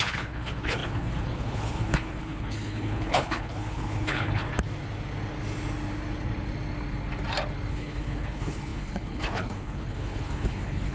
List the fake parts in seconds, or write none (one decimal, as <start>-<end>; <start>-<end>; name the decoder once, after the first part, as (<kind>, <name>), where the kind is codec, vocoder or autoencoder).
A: 0.0-4.5 (codec, HILCodec); 7.7-10.9